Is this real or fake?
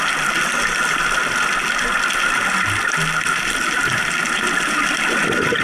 real